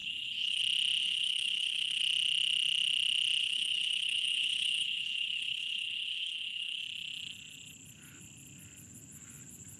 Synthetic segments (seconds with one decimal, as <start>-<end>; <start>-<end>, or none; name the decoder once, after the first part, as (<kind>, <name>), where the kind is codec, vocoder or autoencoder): 0.0-0.6 (codec, HILCodec); 1.0-2.0; 3.4-6.8